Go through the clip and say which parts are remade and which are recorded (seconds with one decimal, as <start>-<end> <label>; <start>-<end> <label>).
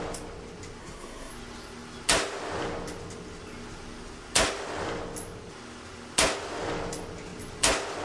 0.0-0.8 recorded; 0.8-1.3 remade; 1.3-8.0 recorded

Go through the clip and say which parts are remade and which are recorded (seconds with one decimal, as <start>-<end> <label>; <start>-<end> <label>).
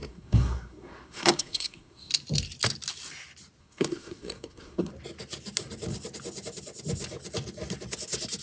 0.0-2.1 remade; 2.1-3.6 recorded; 3.6-4.9 remade; 4.9-8.4 recorded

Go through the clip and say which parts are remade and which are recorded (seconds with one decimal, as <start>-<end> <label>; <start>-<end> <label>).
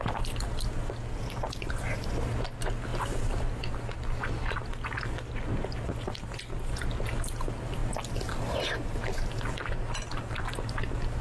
0.0-11.2 recorded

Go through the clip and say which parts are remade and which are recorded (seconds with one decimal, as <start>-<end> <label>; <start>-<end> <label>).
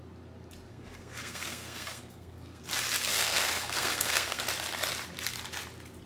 0.0-0.7 recorded; 0.7-2.6 remade; 2.6-3.1 recorded; 3.1-4.4 remade; 4.4-6.1 recorded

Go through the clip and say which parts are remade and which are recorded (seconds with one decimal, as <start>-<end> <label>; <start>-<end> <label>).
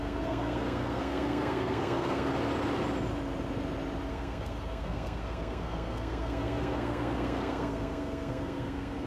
0.0-2.3 remade; 2.3-4.1 recorded; 4.1-9.1 remade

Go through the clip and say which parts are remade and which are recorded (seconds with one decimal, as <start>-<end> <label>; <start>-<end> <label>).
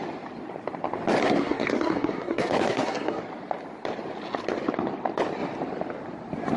0.0-1.2 recorded; 1.2-3.2 remade; 3.2-6.6 recorded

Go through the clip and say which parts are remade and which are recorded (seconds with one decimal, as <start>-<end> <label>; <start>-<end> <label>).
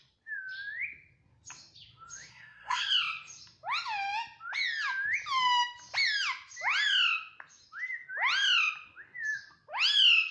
0.0-2.3 recorded; 2.3-2.9 remade; 2.9-10.3 recorded